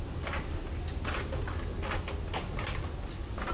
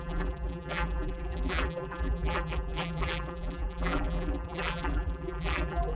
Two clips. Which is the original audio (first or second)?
first